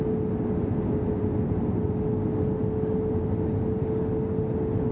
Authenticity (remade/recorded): recorded